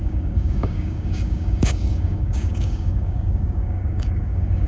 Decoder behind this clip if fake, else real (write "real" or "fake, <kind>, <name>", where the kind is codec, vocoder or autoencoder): fake, codec, DAC